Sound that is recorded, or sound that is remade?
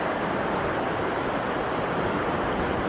recorded